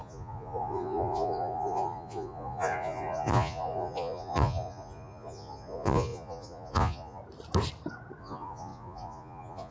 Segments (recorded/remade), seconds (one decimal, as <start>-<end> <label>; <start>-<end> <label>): 0.0-7.2 remade; 7.2-8.2 recorded; 8.2-9.7 remade